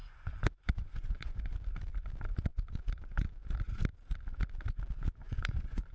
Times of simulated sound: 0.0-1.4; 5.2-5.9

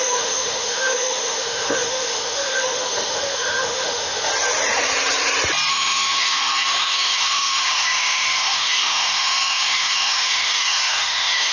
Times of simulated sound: 0.0-4.3; 5.7-11.5